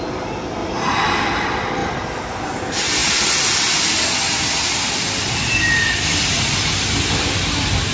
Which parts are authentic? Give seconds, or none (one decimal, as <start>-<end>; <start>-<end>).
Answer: 0.0-0.6; 1.2-1.8; 2.4-7.9